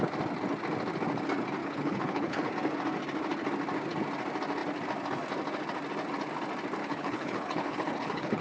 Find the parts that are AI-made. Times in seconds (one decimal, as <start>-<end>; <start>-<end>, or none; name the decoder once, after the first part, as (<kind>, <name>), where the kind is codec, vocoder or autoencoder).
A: 1.6-2.5 (codec, HILCodec); 6.8-8.4